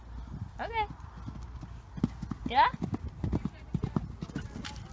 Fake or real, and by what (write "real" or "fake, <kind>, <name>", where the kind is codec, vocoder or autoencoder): real